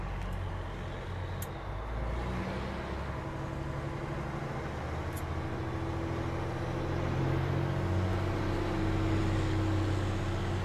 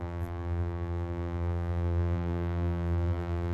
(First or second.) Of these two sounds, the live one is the first